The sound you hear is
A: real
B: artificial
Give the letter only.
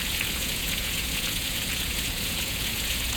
B